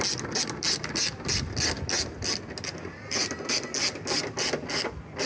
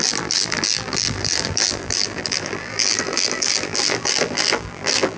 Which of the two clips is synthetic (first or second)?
second